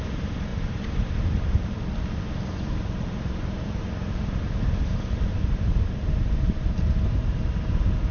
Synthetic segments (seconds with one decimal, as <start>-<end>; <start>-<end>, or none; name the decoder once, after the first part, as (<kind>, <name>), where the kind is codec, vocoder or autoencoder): 0.0-8.1 (vocoder, BigVGAN v2)